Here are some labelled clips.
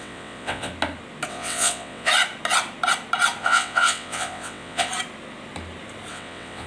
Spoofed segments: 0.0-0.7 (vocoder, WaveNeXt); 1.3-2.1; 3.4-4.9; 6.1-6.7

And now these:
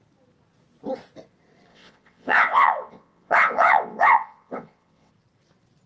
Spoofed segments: 1.7-5.1 (vocoder, WaveNeXt)

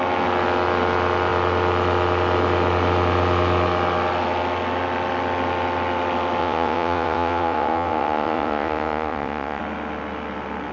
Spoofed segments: 6.4-9.6 (vocoder, WaveNeXt)